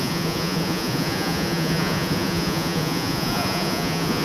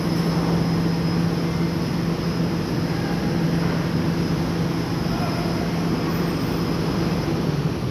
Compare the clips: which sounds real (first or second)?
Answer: second